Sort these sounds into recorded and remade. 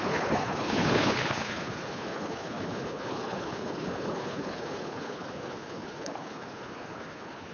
remade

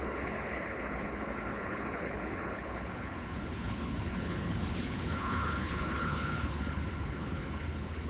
remade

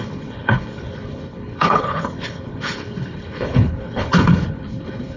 remade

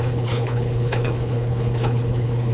remade